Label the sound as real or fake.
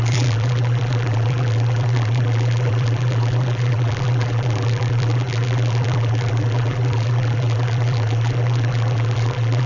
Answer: fake